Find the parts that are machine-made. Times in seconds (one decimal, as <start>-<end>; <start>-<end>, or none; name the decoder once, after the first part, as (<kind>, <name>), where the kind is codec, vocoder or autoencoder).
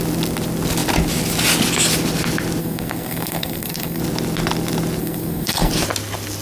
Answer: 2.6-4.0 (codec, SNAC); 5.0-5.7